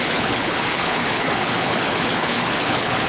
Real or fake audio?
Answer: fake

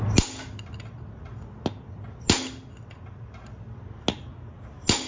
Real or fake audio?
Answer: real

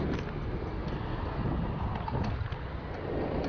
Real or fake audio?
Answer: real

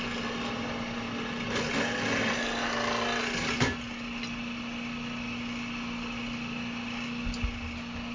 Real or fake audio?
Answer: real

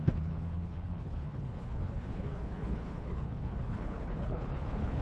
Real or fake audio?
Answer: fake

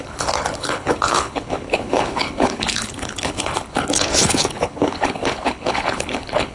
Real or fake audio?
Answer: fake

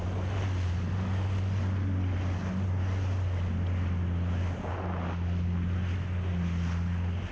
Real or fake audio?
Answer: real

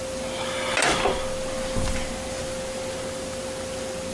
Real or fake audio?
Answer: real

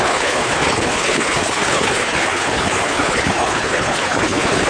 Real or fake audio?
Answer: fake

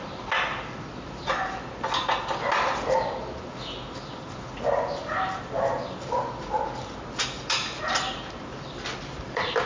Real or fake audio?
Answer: real